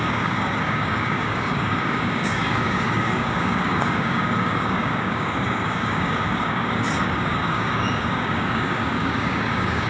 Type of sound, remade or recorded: remade